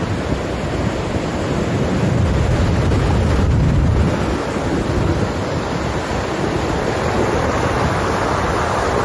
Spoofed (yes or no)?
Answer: no